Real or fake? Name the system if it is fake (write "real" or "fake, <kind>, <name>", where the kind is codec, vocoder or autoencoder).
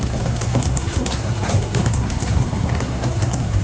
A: fake, codec, SNAC